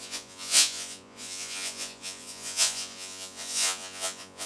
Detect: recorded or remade remade